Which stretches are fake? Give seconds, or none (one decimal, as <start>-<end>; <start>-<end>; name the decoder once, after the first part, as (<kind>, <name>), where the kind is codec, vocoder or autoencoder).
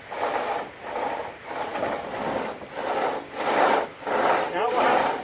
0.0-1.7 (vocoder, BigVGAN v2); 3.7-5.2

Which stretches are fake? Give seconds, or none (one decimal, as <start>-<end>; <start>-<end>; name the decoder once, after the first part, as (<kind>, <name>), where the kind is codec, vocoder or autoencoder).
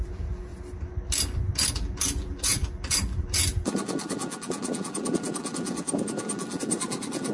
0.0-0.5 (vocoder, BigVGAN v2); 1.7-7.3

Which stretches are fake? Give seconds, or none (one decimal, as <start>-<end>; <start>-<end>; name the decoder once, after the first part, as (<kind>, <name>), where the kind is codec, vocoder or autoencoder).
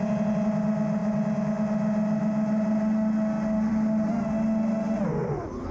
5.2-5.7 (vocoder, BigVGAN v2)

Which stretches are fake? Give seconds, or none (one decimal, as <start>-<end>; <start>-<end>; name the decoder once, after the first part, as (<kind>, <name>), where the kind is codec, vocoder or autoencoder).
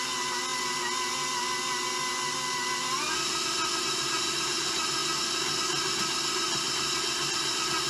none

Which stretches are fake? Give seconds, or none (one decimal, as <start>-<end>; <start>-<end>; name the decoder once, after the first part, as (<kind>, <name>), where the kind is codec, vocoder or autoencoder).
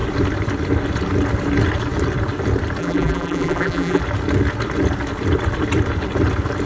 2.8-4.0 (vocoder, BigVGAN v2)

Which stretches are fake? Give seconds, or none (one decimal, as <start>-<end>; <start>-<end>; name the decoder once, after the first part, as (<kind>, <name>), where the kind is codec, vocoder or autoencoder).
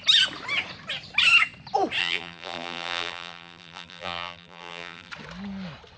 2.0-5.1 (vocoder, BigVGAN v2)